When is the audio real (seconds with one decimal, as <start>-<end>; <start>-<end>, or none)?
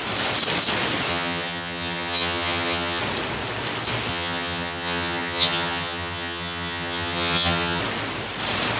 0.0-1.1; 3.0-4.1; 7.8-8.8